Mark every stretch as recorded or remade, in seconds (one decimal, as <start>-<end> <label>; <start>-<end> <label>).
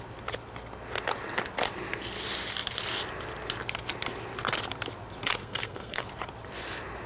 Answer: 0.0-5.4 recorded; 5.4-6.0 remade; 6.0-7.1 recorded